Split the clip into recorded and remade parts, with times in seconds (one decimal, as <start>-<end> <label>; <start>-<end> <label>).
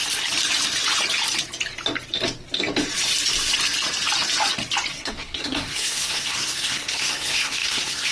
0.0-4.9 recorded; 4.9-8.1 remade